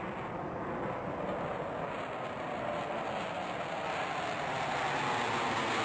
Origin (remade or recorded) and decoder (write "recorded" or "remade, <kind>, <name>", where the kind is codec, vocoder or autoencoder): recorded